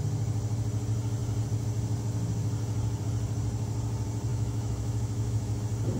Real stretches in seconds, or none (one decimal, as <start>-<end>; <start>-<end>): 0.0-4.3; 5.6-6.0